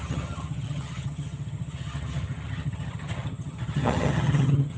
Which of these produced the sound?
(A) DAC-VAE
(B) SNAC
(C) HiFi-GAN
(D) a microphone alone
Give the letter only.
C